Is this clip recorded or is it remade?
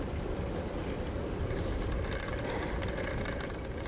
recorded